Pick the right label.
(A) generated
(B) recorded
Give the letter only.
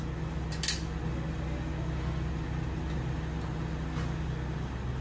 B